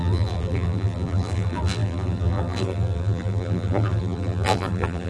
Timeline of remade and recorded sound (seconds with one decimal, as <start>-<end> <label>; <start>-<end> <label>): 0.0-5.1 remade